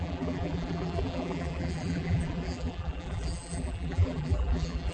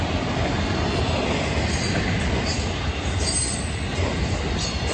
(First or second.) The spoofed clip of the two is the first